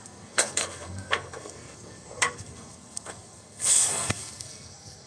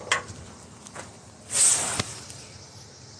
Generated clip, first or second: first